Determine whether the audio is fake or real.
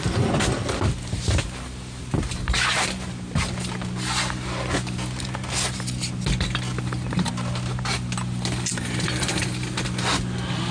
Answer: real